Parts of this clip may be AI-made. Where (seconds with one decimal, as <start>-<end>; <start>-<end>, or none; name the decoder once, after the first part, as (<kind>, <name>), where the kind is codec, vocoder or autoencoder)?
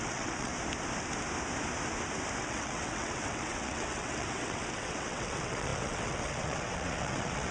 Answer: 0.0-0.5 (vocoder, WaveNeXt); 2.4-7.5